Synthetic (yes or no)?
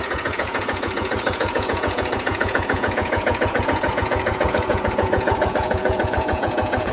yes